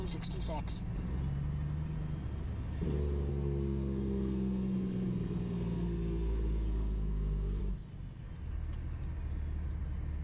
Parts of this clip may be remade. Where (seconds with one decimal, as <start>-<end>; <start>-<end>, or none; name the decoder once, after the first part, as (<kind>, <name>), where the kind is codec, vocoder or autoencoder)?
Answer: 3.3-7.6 (codec, SNAC)